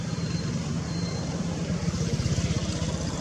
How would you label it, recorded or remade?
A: remade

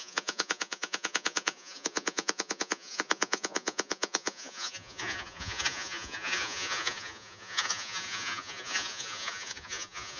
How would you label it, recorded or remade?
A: remade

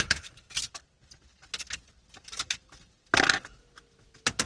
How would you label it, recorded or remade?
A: recorded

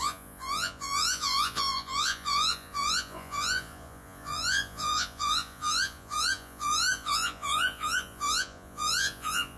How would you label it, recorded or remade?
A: remade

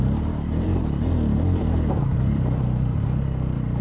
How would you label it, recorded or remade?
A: remade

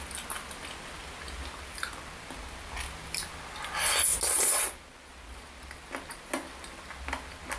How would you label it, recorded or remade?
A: recorded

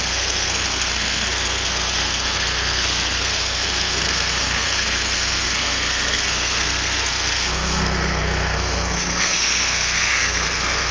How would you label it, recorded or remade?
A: remade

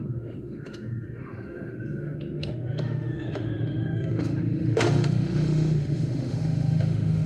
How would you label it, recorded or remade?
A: remade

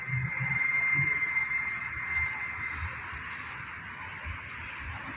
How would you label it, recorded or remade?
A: recorded